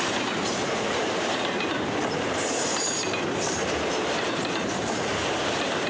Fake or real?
fake